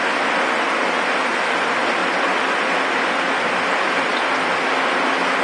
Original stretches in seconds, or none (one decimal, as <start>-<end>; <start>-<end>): 0.0-5.4